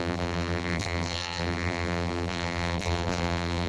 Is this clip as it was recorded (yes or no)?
no